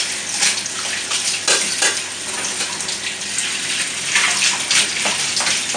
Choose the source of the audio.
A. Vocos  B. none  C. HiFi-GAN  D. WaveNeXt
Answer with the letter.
B